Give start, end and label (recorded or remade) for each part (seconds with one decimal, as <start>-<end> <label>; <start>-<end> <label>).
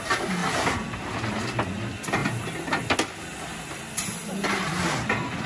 0.0-5.5 recorded